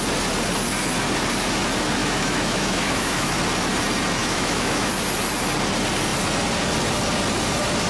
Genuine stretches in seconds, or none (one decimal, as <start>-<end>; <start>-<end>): 0.0-2.0; 3.4-4.2; 4.9-7.9